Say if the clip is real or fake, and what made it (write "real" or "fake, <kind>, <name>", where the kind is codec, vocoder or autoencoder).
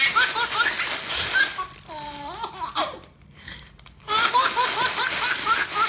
real